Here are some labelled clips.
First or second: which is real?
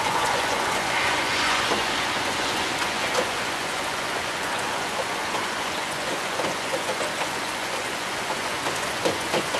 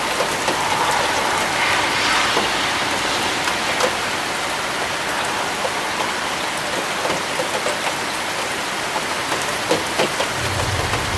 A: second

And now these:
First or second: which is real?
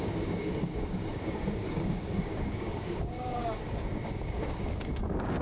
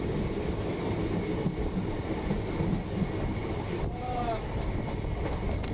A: second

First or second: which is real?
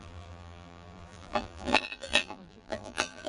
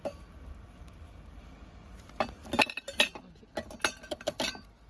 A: second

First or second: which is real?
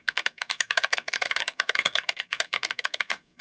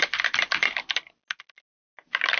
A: second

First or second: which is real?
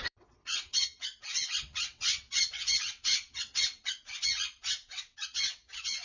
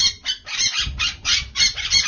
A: second